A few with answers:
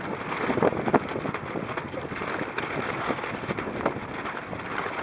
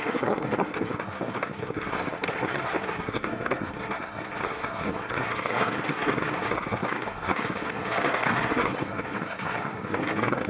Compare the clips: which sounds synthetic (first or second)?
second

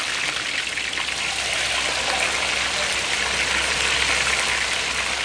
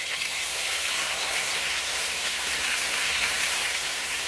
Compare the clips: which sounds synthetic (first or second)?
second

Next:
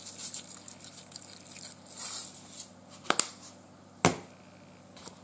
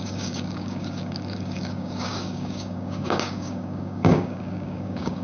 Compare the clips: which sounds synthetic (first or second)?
second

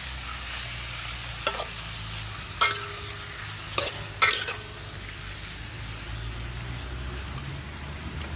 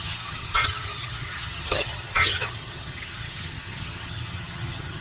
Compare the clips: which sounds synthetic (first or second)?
second